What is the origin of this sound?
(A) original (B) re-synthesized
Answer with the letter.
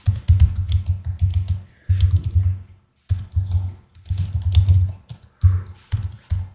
A